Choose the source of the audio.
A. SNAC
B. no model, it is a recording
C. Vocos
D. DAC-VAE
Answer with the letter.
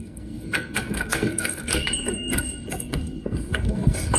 A